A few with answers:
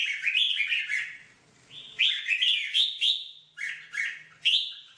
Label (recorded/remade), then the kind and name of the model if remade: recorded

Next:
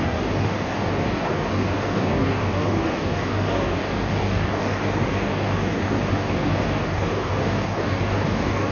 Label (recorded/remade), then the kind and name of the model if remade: remade, codec, DAC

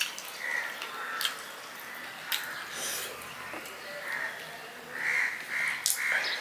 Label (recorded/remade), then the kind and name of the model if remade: recorded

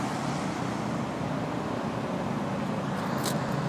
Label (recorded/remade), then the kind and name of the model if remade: recorded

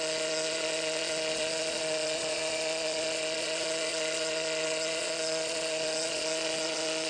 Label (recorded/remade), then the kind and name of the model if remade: remade, vocoder, Vocos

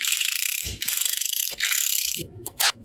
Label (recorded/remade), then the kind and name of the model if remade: remade, codec, SNAC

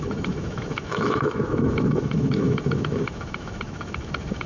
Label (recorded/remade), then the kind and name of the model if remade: remade, autoencoder, DAC-VAE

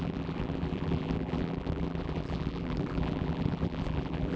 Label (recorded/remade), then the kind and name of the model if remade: remade, vocoder, BigVGAN v2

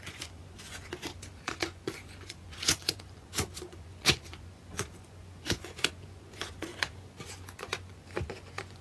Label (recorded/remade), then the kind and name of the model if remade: remade, vocoder, Vocos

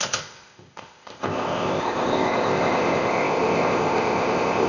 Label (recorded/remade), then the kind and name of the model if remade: remade, codec, ZipCodec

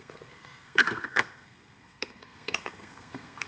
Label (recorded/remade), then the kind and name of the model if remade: remade, codec, SNAC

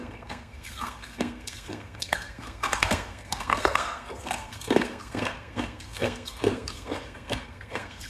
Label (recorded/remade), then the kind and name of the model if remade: remade, codec, SNAC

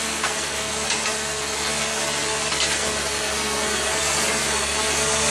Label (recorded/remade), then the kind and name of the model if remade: remade, codec, SNAC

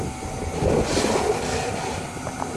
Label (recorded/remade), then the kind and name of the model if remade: recorded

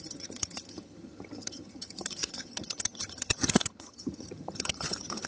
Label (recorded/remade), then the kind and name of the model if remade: remade, vocoder, HiFi-GAN